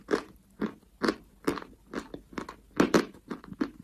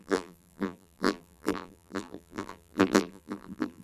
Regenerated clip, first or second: second